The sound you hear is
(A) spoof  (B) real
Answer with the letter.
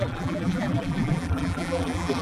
A